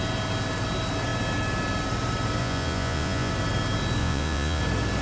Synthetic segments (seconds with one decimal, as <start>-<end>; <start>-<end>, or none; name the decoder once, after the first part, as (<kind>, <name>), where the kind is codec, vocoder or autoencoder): 2.4-3.3 (vocoder, Vocos); 4.0-4.6